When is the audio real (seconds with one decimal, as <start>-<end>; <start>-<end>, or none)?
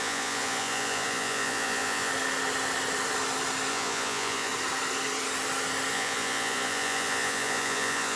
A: 2.1-3.7; 4.5-5.9